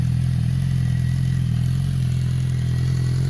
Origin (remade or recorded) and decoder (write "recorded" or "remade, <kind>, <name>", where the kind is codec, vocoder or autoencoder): recorded